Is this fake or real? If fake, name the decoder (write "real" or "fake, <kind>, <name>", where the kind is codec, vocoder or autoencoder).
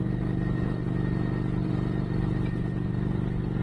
real